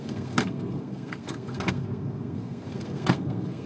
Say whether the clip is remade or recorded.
remade